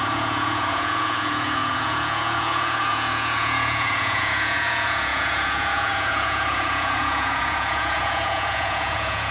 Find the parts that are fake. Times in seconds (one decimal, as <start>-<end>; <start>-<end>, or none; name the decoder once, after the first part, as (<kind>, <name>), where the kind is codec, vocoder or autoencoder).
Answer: 0.0-9.3 (vocoder, Vocos)